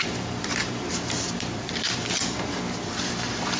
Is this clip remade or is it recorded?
remade